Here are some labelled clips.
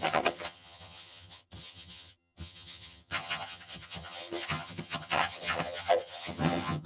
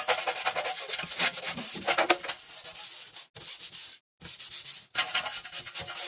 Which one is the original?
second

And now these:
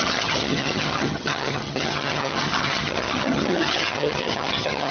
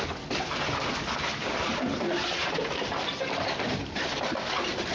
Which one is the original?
second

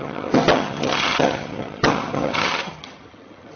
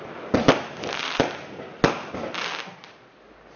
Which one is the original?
second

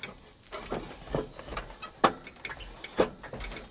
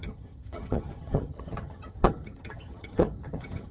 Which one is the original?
first